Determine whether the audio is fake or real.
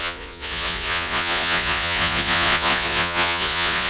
fake